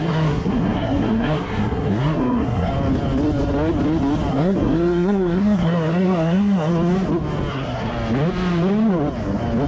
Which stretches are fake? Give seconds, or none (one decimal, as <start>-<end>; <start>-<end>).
0.0-2.7; 4.3-6.7; 7.5-7.9